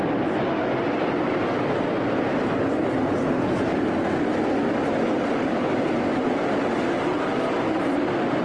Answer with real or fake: real